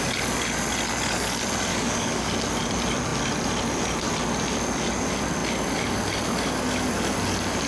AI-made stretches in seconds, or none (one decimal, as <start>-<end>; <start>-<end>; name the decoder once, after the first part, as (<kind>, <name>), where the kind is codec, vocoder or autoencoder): 1.7-2.3 (codec, DAC)